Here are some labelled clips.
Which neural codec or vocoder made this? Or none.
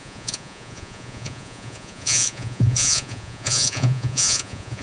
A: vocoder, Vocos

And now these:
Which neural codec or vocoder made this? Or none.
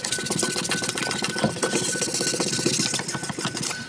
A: none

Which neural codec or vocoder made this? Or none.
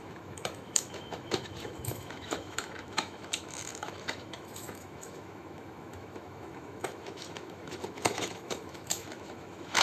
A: autoencoder, DAC-VAE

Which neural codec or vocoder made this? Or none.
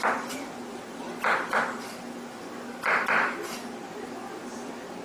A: none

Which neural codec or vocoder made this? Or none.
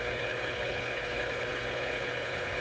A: codec, HILCodec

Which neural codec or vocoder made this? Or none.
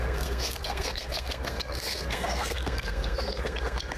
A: codec, SNAC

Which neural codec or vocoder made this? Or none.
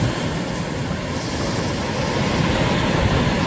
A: none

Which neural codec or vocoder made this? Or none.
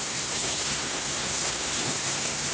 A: codec, SNAC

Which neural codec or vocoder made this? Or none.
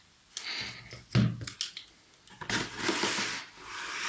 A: none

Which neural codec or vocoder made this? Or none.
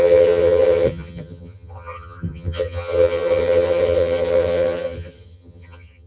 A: vocoder, HiFi-GAN